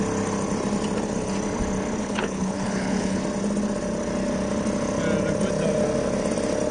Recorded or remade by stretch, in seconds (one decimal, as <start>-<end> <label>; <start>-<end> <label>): 0.0-2.0 recorded; 2.0-3.2 remade; 3.2-6.7 recorded